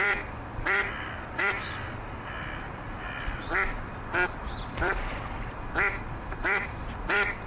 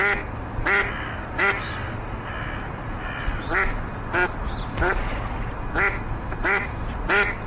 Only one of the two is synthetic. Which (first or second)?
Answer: first